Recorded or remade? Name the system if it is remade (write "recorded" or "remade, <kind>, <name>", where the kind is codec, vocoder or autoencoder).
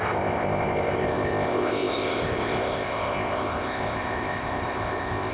remade, codec, ZipCodec